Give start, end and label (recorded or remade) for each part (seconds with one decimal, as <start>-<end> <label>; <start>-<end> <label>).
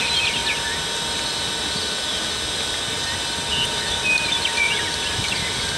0.0-0.4 remade; 0.4-3.5 recorded; 3.5-5.8 remade